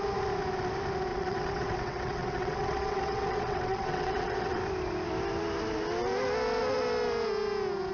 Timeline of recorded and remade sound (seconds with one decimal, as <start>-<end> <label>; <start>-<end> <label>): 0.0-1.1 recorded; 1.1-4.6 remade; 4.6-7.9 recorded